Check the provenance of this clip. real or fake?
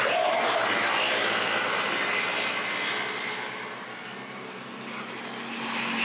real